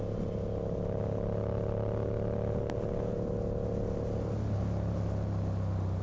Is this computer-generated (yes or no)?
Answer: no